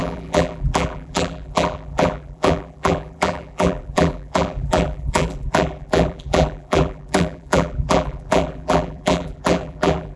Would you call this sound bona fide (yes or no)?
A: no